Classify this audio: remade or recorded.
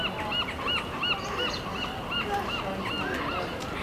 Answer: recorded